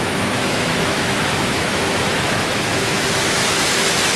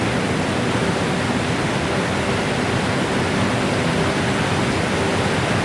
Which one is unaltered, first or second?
second